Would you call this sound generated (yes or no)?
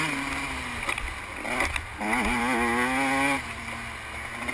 no